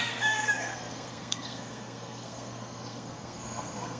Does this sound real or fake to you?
fake